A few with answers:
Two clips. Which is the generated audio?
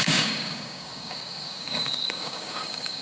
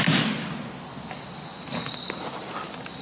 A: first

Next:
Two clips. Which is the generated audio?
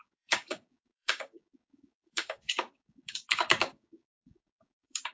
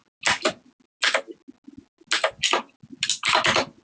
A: first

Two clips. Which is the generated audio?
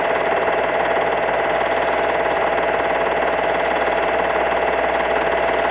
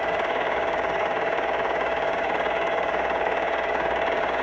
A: second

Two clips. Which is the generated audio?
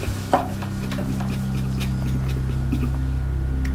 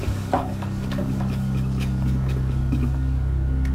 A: second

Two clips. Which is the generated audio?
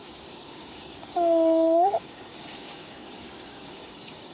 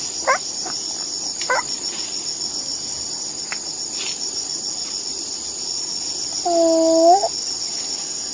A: first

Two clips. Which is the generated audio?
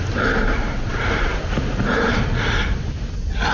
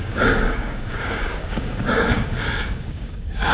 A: second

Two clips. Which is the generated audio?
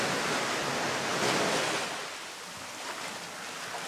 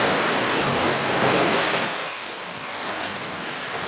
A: second